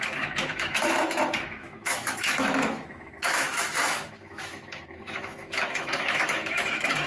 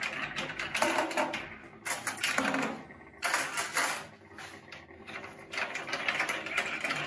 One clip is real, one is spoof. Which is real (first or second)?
second